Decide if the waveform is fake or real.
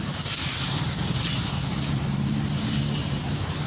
fake